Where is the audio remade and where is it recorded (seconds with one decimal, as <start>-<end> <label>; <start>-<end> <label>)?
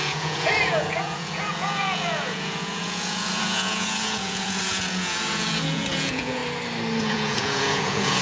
0.0-6.4 remade; 6.4-7.0 recorded; 7.0-8.2 remade